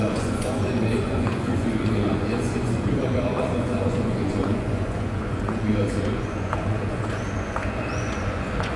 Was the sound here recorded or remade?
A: remade